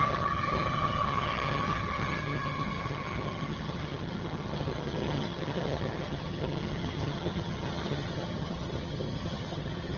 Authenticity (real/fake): fake